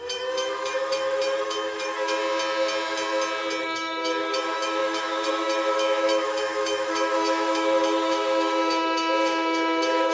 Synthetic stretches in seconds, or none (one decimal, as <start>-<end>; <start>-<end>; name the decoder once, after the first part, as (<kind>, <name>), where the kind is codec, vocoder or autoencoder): 0.0-2.2 (autoencoder, DAC-VAE); 3.6-10.1